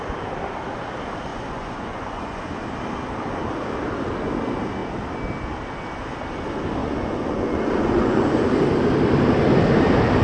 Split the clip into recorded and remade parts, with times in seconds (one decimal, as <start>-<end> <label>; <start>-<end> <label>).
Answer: 0.0-1.3 recorded; 1.3-2.4 remade; 2.4-6.8 recorded; 6.8-8.5 remade; 8.5-10.2 recorded